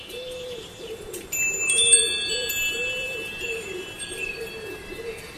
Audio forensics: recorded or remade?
remade